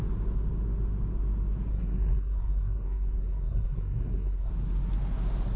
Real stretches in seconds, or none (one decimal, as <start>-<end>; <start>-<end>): 0.0-1.7; 4.5-5.6